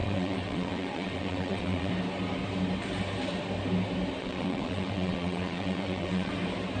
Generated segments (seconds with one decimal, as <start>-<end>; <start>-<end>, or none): 0.0-1.9; 4.2-6.3